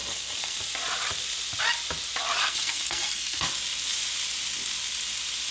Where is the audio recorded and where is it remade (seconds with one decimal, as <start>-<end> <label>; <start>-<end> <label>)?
0.0-0.6 remade; 0.6-2.4 recorded; 2.4-3.5 remade; 3.5-5.5 recorded